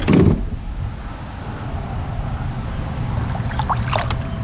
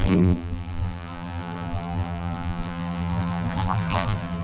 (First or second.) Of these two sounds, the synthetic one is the second